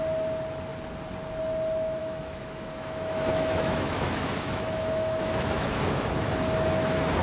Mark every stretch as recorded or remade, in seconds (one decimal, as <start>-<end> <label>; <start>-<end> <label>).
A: 0.0-2.0 recorded; 2.0-6.3 remade; 6.3-7.2 recorded